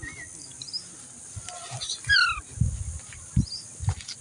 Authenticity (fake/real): real